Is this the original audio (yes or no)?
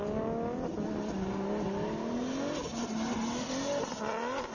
yes